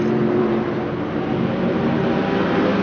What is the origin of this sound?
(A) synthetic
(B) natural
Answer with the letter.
B